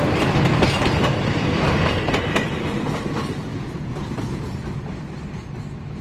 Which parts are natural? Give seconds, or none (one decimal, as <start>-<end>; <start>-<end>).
0.0-3.5; 4.6-6.0